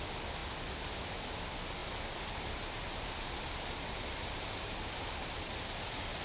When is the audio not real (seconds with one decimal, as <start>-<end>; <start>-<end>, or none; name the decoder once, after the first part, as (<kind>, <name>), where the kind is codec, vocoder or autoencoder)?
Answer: 1.8-5.5 (vocoder, BigVGAN v2)